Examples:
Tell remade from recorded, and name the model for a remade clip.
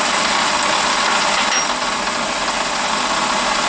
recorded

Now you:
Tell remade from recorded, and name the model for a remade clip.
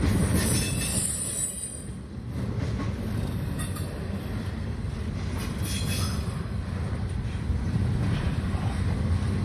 recorded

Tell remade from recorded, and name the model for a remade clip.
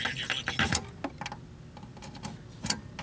recorded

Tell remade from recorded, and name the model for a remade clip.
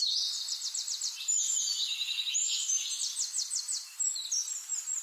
recorded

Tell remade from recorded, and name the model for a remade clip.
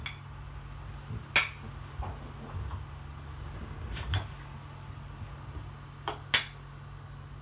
recorded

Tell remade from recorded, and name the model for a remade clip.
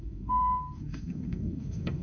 remade, codec, SNAC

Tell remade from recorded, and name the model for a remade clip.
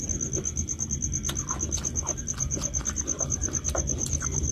recorded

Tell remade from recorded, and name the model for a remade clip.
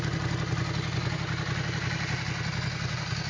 recorded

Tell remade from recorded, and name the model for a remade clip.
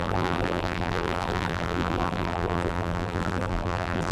remade, vocoder, BigVGAN v2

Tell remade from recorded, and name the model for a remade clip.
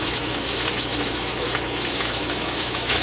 remade, autoencoder, DAC-VAE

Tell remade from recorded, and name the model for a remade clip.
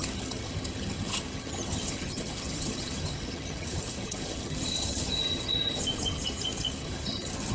remade, vocoder, HiFi-GAN